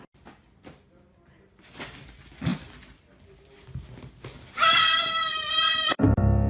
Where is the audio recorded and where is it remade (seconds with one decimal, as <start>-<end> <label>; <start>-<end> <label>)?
0.0-5.2 recorded; 5.2-6.5 remade